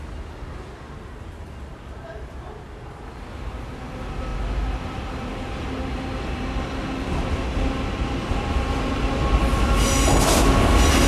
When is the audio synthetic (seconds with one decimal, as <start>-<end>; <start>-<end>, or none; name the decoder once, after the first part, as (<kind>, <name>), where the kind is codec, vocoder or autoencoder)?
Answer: none